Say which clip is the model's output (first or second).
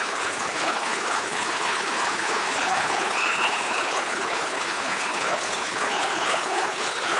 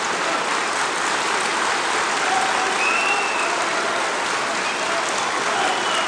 first